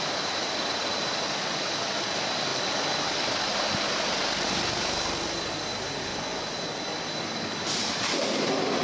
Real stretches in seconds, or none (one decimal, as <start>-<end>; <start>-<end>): 0.0-6.1; 6.6-8.8

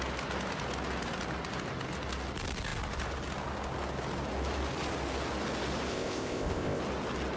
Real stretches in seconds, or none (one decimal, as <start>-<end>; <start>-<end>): 0.0-5.9; 6.8-7.4

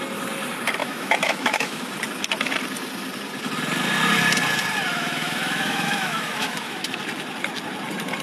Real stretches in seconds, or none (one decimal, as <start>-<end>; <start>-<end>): 0.0-0.8; 1.8-4.9; 7.0-8.2

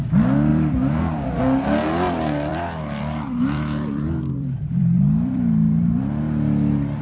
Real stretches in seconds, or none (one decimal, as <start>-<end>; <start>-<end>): 0.0-0.5; 1.4-2.5; 6.2-7.0

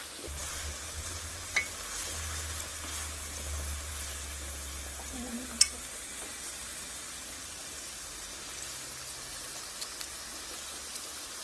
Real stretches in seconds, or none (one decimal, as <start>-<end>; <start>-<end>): 0.0-11.4

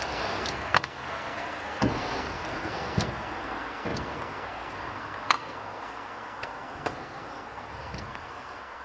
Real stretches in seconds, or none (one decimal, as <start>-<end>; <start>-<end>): none